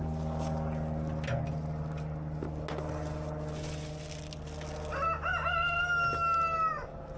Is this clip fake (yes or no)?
no